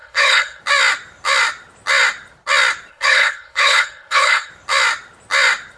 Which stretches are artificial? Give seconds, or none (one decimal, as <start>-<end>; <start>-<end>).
0.0-0.6; 2.9-4.5